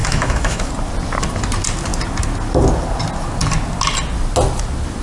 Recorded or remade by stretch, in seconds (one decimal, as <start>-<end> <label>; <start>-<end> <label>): 0.0-0.7 remade; 0.7-5.0 recorded